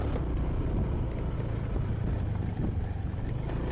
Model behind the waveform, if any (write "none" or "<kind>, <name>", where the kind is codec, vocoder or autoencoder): none